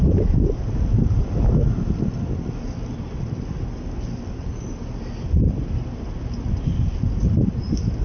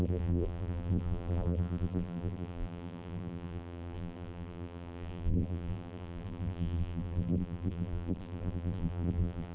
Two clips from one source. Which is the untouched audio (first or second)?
first